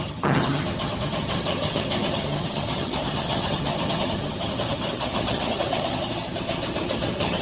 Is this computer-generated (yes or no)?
yes